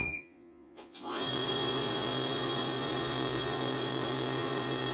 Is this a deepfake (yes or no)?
yes